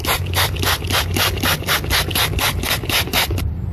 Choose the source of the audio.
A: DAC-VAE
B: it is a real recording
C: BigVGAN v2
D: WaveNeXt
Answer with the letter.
B